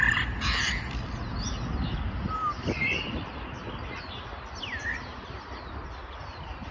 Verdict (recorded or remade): recorded